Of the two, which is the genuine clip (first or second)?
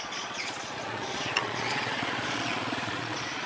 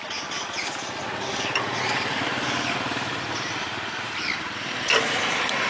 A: second